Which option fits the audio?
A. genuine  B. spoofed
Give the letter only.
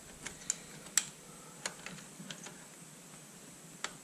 A